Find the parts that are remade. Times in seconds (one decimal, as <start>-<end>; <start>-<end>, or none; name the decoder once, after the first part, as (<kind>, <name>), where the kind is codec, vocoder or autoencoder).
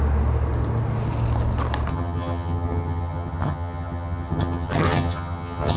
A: 1.9-5.8 (vocoder, HiFi-GAN)